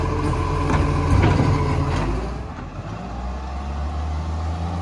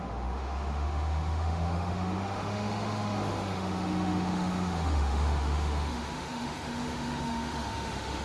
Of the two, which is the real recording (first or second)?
first